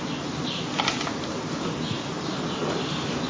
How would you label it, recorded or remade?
recorded